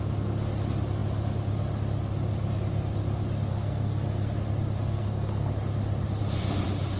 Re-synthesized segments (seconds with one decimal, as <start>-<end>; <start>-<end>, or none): 3.5-4.3; 4.8-5.5